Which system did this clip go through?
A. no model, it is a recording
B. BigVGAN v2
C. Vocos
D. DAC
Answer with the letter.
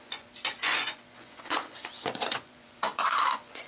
C